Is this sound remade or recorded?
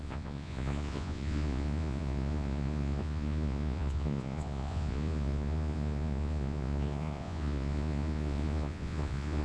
remade